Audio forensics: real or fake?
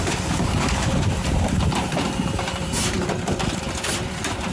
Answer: fake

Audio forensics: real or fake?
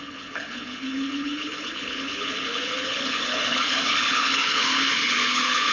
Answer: fake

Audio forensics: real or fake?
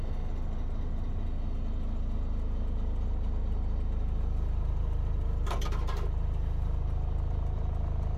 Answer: real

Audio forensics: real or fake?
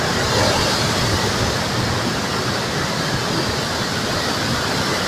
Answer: real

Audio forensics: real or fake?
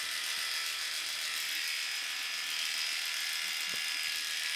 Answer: real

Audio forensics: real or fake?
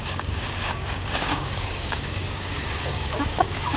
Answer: fake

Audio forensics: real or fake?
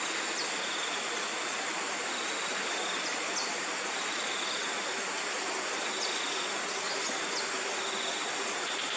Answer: real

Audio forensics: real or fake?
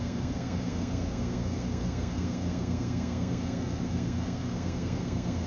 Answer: fake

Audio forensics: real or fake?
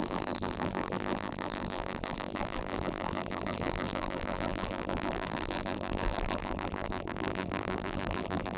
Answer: fake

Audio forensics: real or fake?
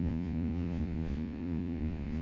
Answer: fake